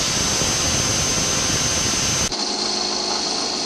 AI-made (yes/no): no